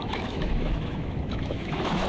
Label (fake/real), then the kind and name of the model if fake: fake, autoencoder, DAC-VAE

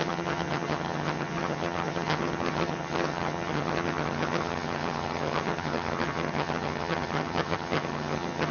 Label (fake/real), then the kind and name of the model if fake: fake, vocoder, HiFi-GAN